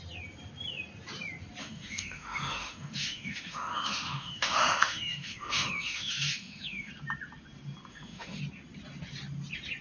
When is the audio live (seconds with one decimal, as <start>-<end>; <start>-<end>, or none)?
0.0-1.6; 6.9-7.9; 8.4-9.8